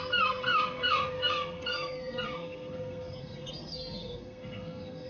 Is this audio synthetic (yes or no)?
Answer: yes